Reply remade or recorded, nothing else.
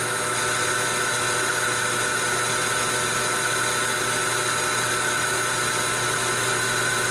recorded